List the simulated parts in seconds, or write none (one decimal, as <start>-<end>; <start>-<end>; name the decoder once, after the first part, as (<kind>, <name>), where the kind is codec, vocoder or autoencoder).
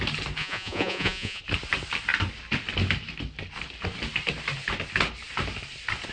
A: 0.4-1.4 (vocoder, Vocos)